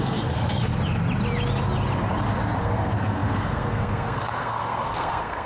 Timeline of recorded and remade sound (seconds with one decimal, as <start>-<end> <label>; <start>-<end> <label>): 0.0-0.7 remade; 0.7-2.6 recorded; 2.6-5.5 remade